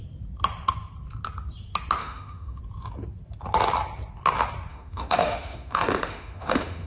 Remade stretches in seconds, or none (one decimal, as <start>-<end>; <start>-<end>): 2.0-2.6; 4.7-6.9